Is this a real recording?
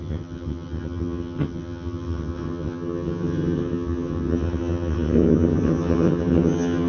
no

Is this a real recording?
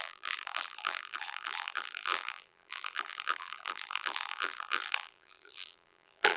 no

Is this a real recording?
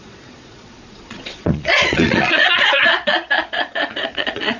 no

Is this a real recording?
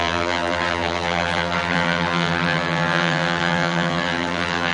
no